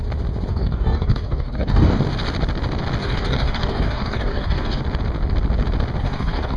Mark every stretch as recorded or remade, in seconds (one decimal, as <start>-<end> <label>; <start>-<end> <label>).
0.0-0.5 recorded; 0.5-2.0 remade; 2.0-3.0 recorded; 3.0-4.8 remade; 4.8-6.0 recorded; 6.0-6.6 remade